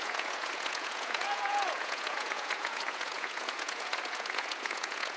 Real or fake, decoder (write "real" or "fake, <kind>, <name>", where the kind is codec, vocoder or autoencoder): fake, vocoder, Vocos